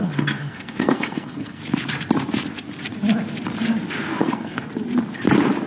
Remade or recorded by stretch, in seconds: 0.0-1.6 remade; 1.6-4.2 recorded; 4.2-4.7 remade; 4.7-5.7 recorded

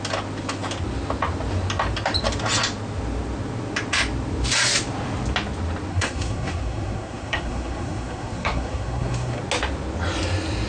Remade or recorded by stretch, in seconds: 0.0-5.9 recorded; 5.9-9.4 remade; 9.4-10.7 recorded

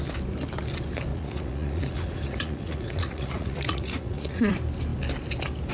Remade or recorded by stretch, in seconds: 0.0-1.1 recorded; 1.1-4.5 remade; 4.5-5.7 recorded